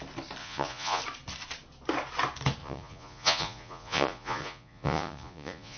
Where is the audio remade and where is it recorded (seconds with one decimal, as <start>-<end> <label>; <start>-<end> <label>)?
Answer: 0.0-0.4 recorded; 0.4-1.0 remade; 1.0-2.6 recorded; 2.6-5.8 remade